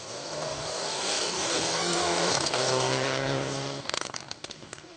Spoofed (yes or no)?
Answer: yes